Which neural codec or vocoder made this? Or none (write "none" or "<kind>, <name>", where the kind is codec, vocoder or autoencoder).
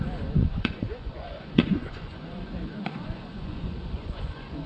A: vocoder, Vocos